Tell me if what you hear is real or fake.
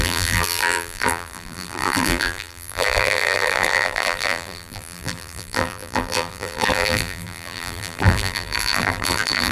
fake